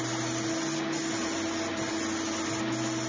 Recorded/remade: recorded